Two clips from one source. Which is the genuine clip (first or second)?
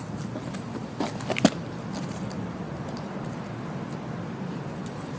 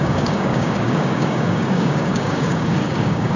first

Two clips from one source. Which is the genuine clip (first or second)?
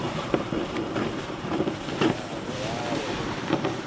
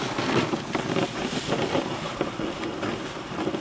second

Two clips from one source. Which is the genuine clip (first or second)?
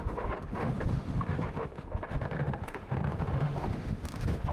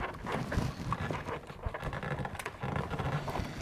second